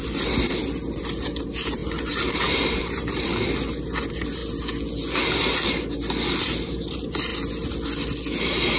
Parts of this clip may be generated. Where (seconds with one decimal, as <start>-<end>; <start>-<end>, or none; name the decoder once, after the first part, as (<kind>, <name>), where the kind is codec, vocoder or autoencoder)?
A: 0.0-4.4 (vocoder, BigVGAN v2); 6.4-7.3; 8.4-8.8